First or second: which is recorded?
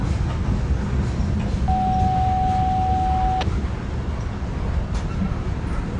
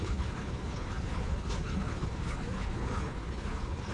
first